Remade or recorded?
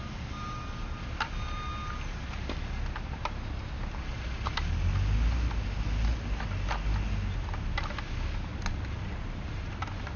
recorded